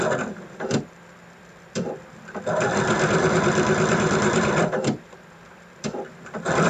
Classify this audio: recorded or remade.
remade